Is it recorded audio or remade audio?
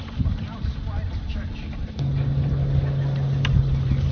recorded